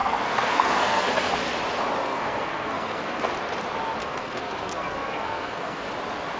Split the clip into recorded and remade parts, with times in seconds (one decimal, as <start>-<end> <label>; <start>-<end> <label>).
0.0-1.3 remade; 1.3-2.0 recorded; 2.0-3.3 remade; 3.3-4.0 recorded; 4.0-5.9 remade; 5.9-6.4 recorded